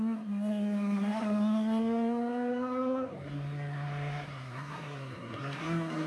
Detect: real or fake fake